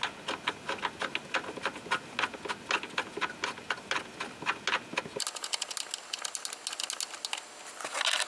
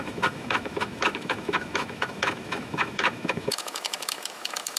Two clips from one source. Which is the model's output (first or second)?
second